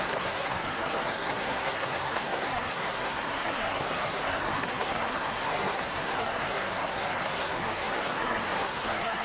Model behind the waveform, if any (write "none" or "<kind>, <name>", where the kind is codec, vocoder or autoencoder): codec, SNAC